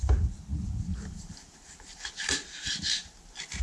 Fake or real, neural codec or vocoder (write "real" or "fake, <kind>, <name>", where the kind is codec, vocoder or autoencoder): real